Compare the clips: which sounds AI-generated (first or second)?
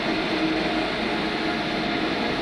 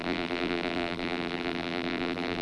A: second